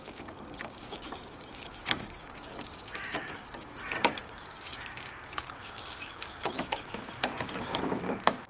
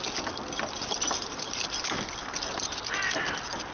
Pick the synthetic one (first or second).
first